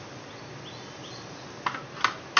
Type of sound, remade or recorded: recorded